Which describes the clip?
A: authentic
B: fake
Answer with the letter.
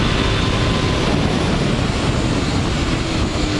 A